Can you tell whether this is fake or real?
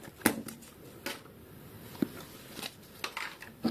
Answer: real